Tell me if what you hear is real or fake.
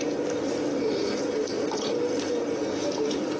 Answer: real